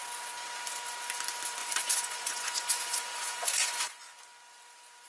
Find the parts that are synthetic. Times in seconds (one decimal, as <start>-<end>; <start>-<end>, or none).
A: 1.6-4.0